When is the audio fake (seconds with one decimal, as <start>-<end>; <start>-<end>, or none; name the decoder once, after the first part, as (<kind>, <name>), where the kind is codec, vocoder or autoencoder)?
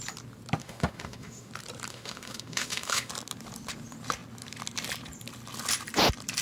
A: 0.6-1.5 (autoencoder, DAC-VAE); 1.9-3.1